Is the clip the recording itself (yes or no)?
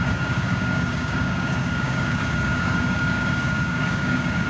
no